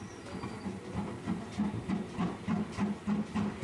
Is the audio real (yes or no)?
yes